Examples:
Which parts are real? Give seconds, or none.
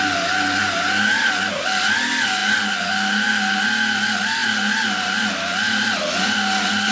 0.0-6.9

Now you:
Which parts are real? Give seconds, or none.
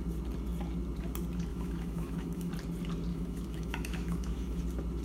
0.0-1.5; 2.5-3.1; 4.6-5.0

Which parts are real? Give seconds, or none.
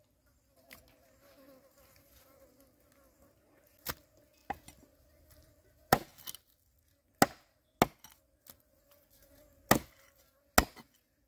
0.0-11.3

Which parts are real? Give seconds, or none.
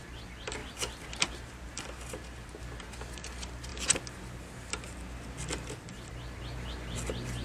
0.0-7.4